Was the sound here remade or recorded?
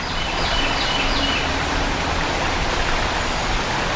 recorded